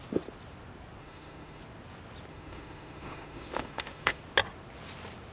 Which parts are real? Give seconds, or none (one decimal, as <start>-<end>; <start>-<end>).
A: 0.0-1.0; 1.6-2.3; 4.2-5.3